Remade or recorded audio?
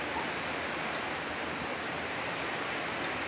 recorded